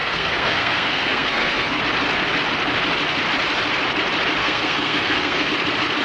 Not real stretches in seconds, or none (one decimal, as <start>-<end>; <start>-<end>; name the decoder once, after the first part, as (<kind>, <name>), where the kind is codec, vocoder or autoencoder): 0.0-1.8 (codec, SNAC); 4.4-5.5